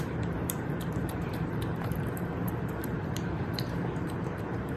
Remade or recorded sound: remade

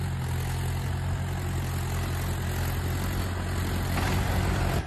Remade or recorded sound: recorded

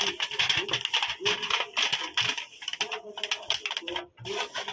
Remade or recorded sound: recorded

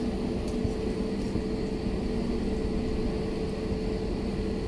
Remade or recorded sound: recorded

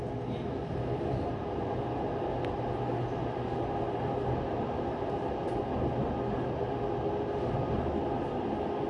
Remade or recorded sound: recorded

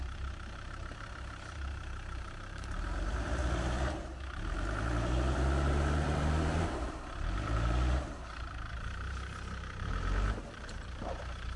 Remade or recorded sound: remade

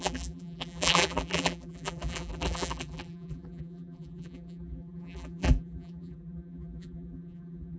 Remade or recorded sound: remade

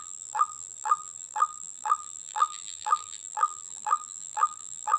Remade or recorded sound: remade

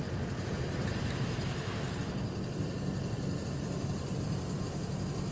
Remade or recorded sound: remade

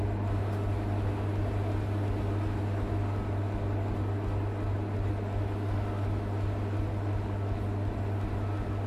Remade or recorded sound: recorded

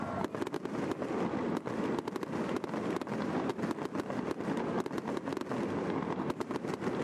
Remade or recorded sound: recorded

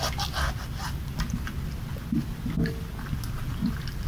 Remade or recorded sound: recorded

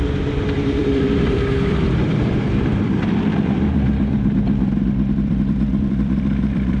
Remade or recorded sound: remade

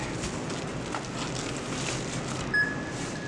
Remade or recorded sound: recorded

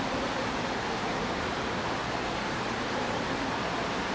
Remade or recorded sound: remade